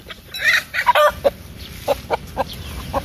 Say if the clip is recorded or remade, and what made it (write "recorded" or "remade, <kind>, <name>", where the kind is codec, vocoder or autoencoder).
remade, vocoder, BigVGAN v2